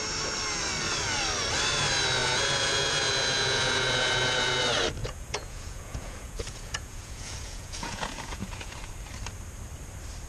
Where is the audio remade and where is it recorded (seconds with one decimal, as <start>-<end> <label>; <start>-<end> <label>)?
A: 0.0-2.2 recorded; 2.2-4.6 remade; 4.6-5.0 recorded; 5.0-8.9 remade; 8.9-10.3 recorded